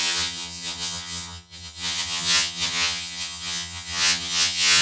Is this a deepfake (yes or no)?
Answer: yes